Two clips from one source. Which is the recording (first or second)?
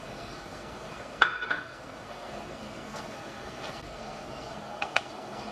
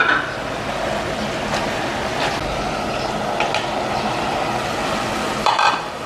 second